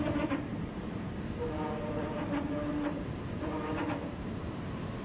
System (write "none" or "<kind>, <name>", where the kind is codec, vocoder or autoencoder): vocoder, BigVGAN v2